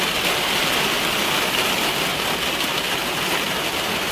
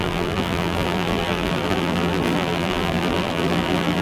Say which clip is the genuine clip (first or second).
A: first